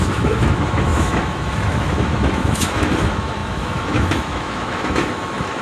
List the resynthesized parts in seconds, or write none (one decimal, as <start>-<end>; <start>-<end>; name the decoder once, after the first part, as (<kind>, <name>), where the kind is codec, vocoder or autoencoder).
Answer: 0.0-5.6 (autoencoder, DAC-VAE)